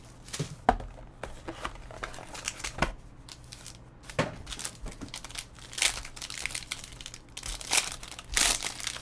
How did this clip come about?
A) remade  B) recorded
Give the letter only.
B